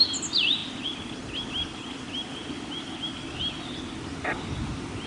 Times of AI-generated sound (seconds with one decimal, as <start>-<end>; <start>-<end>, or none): none